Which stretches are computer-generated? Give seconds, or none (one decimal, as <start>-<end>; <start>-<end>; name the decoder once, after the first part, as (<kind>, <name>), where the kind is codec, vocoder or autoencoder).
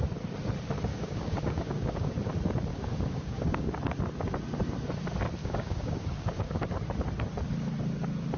0.9-2.1 (codec, DAC); 2.7-3.7; 5.4-6.6